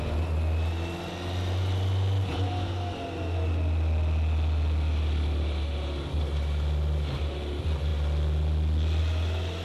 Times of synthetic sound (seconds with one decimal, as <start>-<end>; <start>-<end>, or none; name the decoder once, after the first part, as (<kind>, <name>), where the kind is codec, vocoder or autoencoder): none